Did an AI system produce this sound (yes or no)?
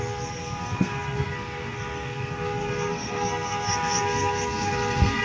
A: yes